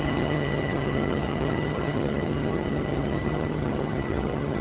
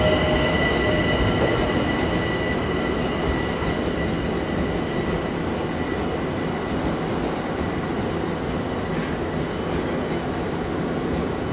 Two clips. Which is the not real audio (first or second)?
first